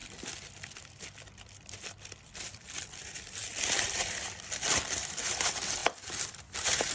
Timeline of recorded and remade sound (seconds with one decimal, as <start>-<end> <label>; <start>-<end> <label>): 0.0-6.9 remade